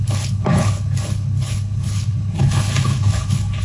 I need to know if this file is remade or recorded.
remade